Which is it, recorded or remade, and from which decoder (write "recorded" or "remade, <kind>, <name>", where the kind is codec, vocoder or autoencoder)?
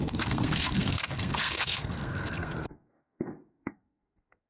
remade, codec, SNAC